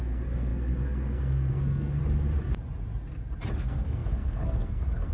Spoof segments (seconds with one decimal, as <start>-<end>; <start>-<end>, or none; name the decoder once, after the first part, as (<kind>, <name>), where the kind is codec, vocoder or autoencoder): 0.0-2.0 (codec, SNAC); 3.6-5.1